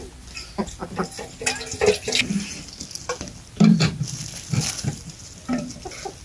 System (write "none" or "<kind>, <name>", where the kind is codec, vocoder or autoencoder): none